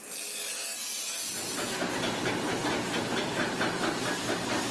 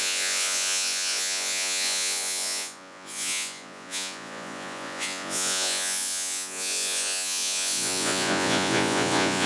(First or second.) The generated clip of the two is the second